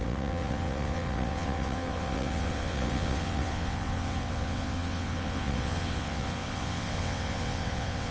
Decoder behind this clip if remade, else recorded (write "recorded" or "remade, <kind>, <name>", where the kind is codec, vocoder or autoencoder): remade, vocoder, WaveNeXt